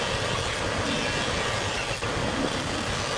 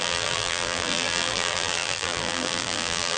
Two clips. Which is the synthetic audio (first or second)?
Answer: second